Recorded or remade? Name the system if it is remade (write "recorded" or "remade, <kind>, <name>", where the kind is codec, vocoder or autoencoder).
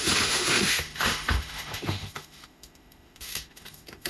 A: remade, autoencoder, DAC-VAE